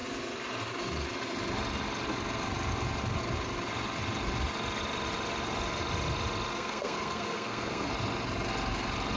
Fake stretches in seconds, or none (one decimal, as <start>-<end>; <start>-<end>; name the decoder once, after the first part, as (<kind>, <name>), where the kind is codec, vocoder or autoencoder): 6.5-7.9 (codec, SNAC)